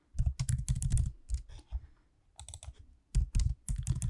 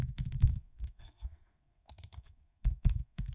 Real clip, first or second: first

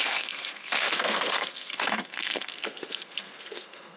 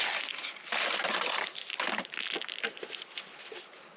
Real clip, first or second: second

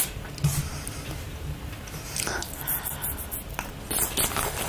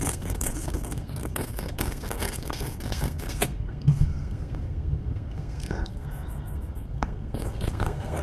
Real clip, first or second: first